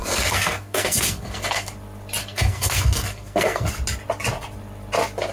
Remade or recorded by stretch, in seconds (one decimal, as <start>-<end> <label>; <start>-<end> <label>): 0.0-1.7 remade; 1.7-2.2 recorded; 2.2-3.7 remade; 3.7-5.3 recorded